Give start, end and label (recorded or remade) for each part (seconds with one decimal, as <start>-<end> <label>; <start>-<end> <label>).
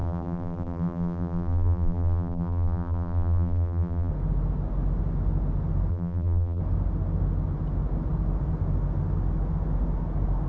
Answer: 0.0-4.1 remade; 4.1-5.9 recorded; 5.9-6.6 remade; 6.6-10.5 recorded